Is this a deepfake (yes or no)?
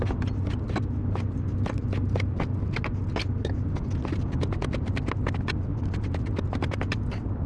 no